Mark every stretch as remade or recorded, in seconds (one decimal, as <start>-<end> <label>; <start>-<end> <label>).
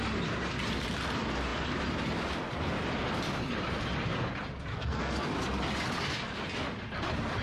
0.0-4.7 recorded; 4.7-5.3 remade; 5.3-7.4 recorded